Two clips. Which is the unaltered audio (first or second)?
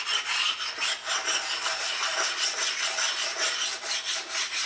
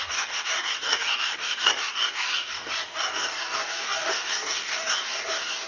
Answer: first